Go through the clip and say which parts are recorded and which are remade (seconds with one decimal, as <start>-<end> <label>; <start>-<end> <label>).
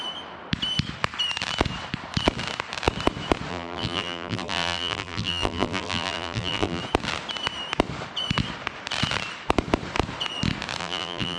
0.0-3.5 recorded; 3.5-6.8 remade; 6.8-10.8 recorded; 10.8-11.4 remade